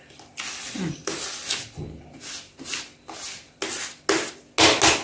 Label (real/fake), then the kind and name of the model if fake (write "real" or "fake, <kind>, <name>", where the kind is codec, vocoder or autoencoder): real